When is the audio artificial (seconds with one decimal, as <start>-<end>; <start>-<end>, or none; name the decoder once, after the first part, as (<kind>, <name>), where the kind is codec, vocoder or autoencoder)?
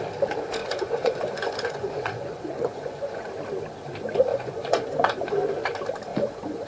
0.6-3.3 (vocoder, Vocos); 4.3-5.3; 6.1-6.7